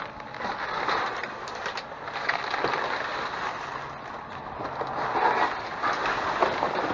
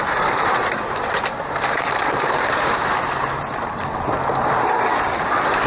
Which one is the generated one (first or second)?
second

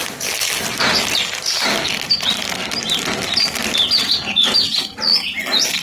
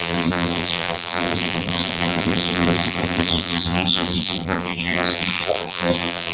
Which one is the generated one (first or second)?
second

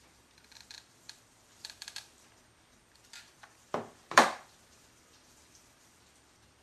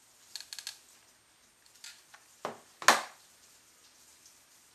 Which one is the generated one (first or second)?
first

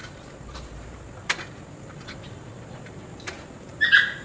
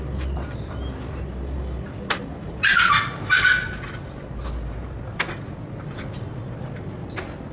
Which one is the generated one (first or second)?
first